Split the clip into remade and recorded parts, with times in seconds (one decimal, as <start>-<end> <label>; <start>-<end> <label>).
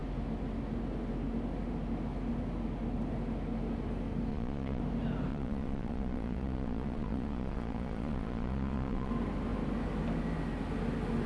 0.0-4.3 recorded; 4.3-4.8 remade; 4.8-5.3 recorded; 5.3-9.1 remade; 9.1-11.3 recorded